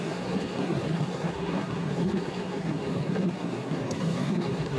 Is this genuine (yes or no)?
no